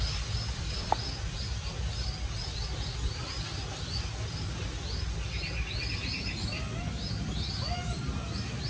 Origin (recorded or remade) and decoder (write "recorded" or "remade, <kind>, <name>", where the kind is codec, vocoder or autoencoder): recorded